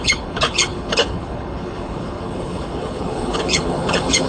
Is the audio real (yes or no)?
no